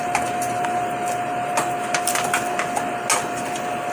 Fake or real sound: real